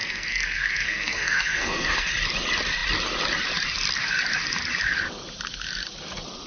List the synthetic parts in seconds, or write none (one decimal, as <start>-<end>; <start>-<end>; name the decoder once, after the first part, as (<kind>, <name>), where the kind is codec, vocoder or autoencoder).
0.0-2.1 (codec, SNAC)